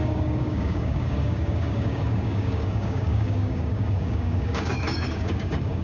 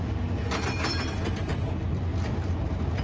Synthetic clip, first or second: first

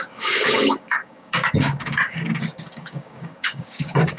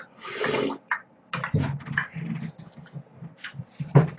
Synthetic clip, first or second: first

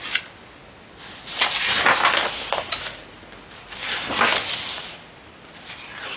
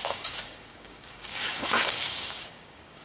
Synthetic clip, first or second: second